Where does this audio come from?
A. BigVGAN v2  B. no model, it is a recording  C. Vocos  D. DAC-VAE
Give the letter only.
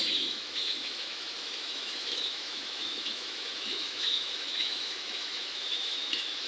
D